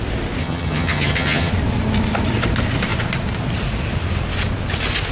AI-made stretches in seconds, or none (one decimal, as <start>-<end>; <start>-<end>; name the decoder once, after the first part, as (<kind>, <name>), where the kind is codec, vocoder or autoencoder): 0.4-1.5 (vocoder, HiFi-GAN)